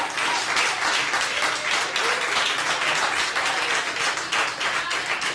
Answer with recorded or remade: recorded